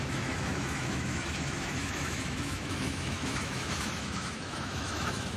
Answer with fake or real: fake